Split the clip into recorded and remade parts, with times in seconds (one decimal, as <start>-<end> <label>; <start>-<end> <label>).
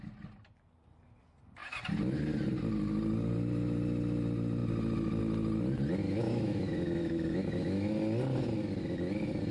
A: 0.0-6.0 recorded; 6.0-7.9 remade; 7.9-9.5 recorded